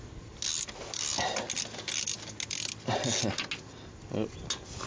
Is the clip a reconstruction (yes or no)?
no